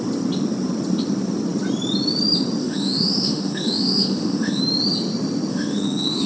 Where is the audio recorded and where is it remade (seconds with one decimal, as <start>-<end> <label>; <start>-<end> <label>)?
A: 0.0-2.6 recorded; 2.6-4.6 remade; 4.6-5.5 recorded; 5.5-6.3 remade